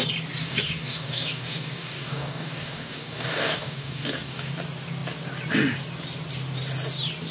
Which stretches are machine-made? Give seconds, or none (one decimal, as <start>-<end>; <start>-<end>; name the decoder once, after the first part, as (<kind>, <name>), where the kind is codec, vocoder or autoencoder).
0.4-4.5 (codec, DAC)